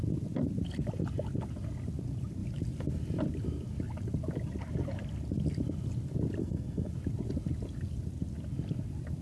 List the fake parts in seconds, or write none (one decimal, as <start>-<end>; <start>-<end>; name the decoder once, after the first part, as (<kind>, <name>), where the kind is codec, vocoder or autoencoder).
6.4-6.9 (codec, SNAC)